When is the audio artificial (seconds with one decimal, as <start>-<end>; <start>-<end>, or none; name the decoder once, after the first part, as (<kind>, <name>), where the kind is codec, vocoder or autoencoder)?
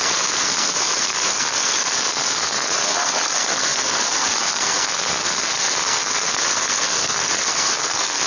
0.0-8.3 (codec, SNAC)